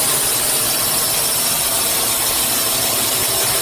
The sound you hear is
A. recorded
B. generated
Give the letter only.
A